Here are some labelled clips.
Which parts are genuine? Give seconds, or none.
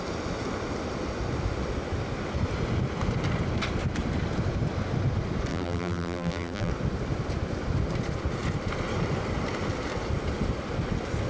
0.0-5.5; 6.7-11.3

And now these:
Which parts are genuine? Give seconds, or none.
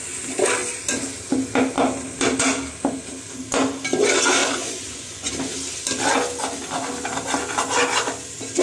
0.0-4.4; 5.3-8.6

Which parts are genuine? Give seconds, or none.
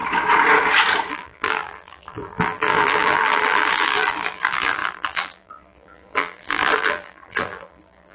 0.0-1.1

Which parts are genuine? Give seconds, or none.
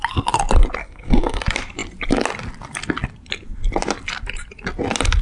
0.0-0.8; 1.4-5.2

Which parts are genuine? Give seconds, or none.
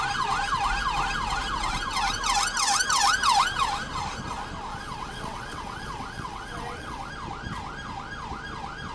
0.0-4.7; 7.1-8.9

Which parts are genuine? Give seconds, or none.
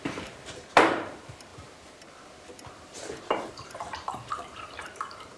1.5-3.5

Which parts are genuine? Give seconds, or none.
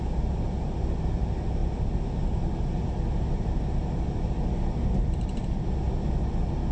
0.0-6.7